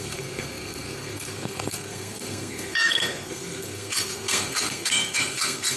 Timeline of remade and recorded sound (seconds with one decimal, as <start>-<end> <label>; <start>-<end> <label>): 0.0-5.8 remade